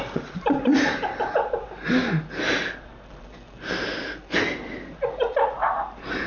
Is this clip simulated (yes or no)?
no